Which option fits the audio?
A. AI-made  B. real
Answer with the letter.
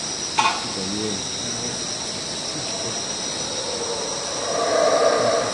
B